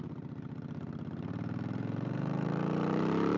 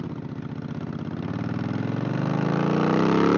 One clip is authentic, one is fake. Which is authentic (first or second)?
second